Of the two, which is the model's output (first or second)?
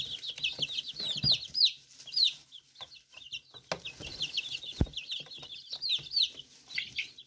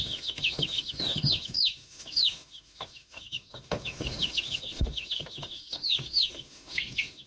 second